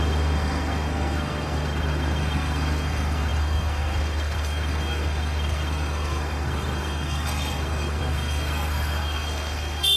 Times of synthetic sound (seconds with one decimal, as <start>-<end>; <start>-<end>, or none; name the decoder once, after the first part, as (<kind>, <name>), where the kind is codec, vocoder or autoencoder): 0.0-10.0 (codec, SNAC)